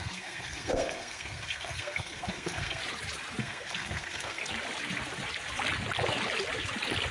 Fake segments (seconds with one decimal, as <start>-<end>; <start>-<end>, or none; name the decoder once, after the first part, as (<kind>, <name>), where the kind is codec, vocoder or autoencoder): 0.0-2.8 (codec, SNAC); 3.4-4.4